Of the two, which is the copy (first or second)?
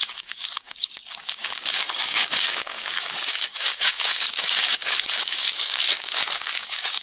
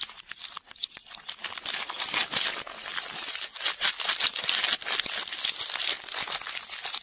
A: first